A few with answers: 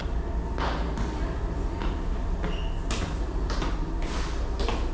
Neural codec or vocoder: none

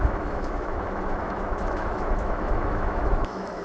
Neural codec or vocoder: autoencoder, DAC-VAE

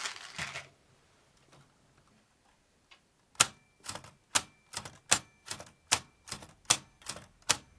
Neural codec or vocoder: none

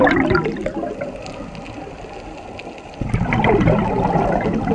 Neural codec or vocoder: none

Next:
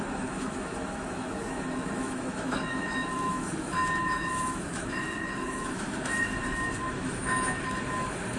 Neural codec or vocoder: autoencoder, DAC-VAE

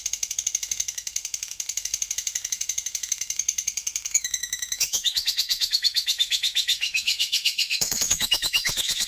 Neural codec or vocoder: autoencoder, DAC-VAE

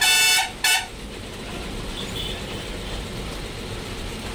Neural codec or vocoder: none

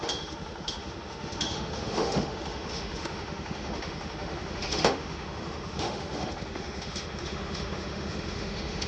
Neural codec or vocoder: autoencoder, DAC-VAE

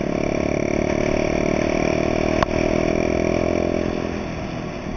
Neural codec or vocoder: none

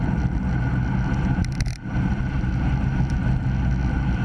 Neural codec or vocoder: none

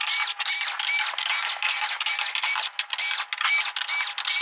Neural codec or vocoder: none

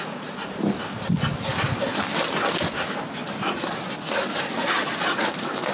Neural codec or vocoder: none